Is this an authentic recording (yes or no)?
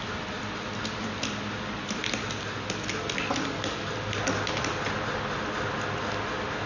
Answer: yes